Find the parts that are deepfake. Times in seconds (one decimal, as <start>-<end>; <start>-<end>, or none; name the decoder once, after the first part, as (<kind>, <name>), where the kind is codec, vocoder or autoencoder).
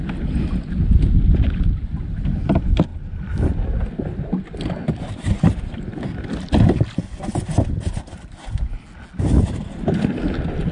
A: none